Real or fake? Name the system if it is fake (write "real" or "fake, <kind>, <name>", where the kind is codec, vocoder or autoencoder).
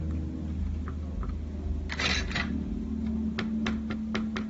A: real